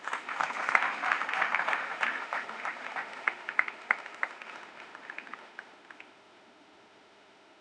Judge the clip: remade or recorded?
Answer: remade